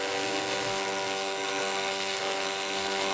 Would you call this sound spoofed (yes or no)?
yes